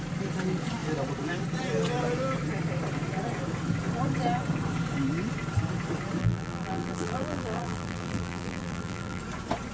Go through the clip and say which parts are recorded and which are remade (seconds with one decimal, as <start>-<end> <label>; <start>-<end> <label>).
0.0-6.2 recorded; 6.2-9.2 remade; 9.2-9.7 recorded